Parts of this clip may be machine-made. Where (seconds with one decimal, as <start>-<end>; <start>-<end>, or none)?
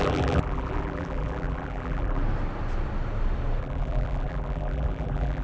0.0-2.2; 3.6-5.4